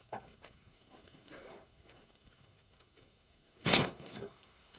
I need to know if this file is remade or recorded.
remade